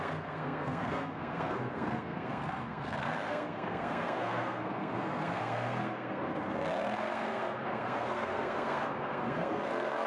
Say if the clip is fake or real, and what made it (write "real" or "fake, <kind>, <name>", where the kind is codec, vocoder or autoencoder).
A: fake, codec, SNAC